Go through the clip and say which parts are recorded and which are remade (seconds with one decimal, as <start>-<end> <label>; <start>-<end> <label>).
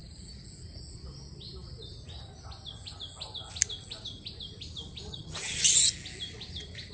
0.0-5.1 recorded; 5.1-5.6 remade; 5.6-6.9 recorded